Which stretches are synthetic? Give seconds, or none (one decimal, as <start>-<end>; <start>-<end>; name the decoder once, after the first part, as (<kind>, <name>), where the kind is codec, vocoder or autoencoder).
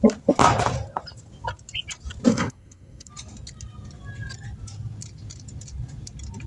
2.3-3.1 (codec, SNAC)